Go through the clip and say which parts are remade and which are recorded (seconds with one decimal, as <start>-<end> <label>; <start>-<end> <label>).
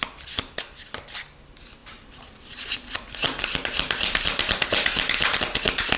0.0-1.8 recorded; 1.8-5.4 remade; 5.4-6.0 recorded